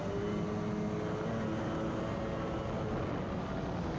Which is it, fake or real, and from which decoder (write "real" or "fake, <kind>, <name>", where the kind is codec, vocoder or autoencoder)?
real